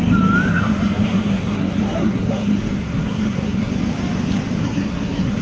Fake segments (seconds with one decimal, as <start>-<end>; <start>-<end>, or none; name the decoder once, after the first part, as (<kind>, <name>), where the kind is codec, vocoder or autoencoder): 0.5-3.7 (codec, SNAC); 4.6-5.4